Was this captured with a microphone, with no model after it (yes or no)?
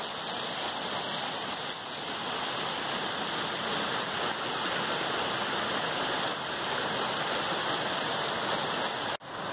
yes